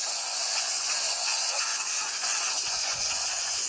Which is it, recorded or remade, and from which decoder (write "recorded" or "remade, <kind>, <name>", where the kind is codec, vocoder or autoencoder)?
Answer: remade, vocoder, Vocos